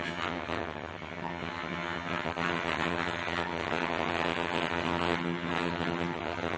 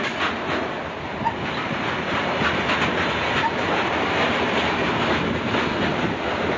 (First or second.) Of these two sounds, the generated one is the first